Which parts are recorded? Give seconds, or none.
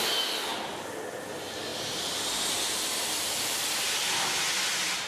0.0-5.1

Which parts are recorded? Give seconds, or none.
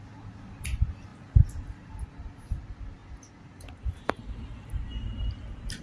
0.0-5.8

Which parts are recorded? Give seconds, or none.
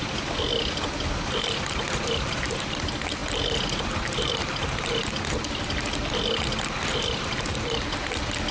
0.0-8.5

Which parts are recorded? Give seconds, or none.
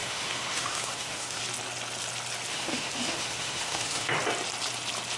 1.4-2.5; 4.1-5.2